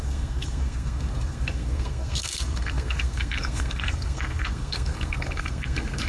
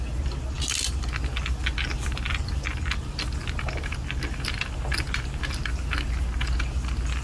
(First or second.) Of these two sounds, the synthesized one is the first